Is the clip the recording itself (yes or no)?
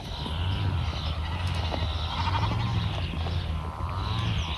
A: yes